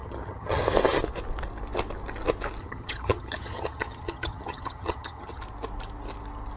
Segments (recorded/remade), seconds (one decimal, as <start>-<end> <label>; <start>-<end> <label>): 0.0-0.6 remade; 0.6-2.6 recorded; 2.6-5.4 remade; 5.4-6.6 recorded